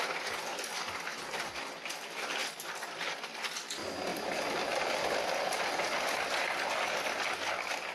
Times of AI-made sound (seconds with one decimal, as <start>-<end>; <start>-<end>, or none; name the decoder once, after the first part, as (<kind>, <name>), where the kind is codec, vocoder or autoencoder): 1.1-1.8 (vocoder, BigVGAN v2); 2.4-3.0